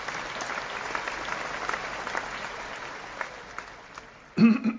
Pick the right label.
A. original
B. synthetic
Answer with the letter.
A